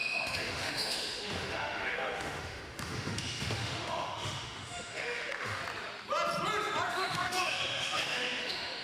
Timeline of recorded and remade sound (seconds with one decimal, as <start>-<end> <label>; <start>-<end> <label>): 0.0-5.6 remade; 5.6-6.9 recorded; 6.9-8.8 remade